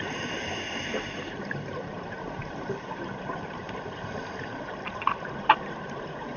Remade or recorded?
remade